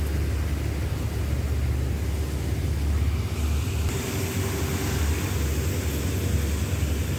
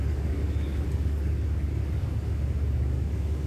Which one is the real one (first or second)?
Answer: first